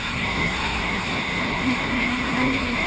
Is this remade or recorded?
remade